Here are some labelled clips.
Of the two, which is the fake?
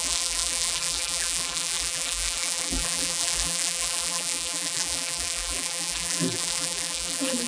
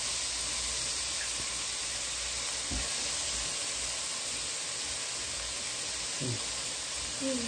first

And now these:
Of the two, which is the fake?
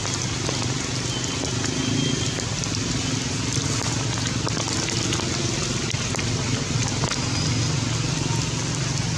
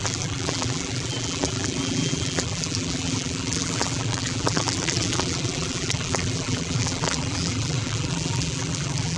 second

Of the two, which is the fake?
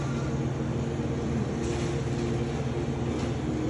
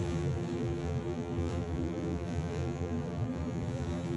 second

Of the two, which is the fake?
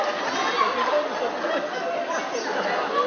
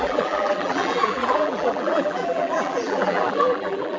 second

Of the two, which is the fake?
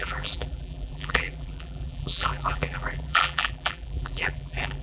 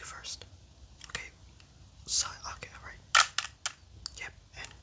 first